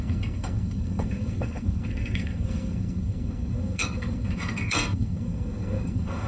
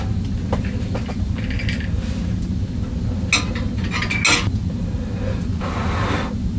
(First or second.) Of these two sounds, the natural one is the second